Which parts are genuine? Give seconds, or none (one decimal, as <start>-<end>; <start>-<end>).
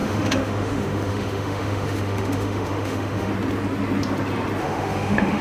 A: 3.3-4.6